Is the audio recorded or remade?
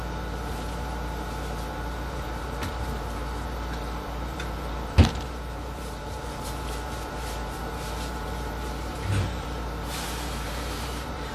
remade